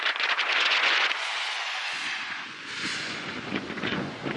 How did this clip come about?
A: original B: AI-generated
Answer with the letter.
B